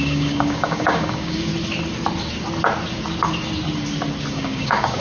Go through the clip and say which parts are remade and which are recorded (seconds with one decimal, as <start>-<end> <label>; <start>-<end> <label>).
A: 0.0-1.5 remade; 1.5-4.3 recorded; 4.3-5.0 remade